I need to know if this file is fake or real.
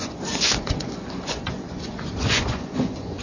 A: fake